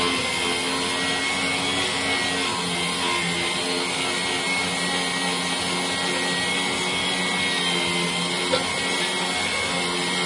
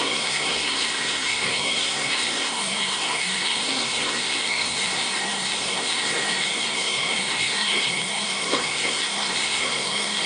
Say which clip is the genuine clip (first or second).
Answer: first